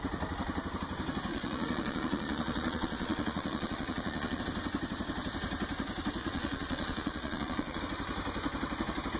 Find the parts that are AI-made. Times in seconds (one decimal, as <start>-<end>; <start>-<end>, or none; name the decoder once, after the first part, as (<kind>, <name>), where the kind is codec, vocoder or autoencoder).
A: 1.3-4.4 (vocoder, Vocos); 6.2-7.8